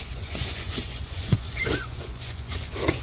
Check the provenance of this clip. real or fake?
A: fake